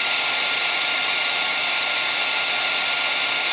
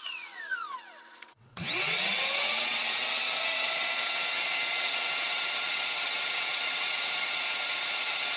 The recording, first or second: first